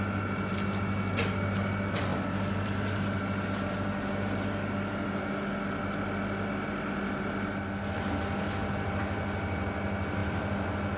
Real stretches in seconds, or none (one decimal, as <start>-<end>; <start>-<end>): 0.0-11.0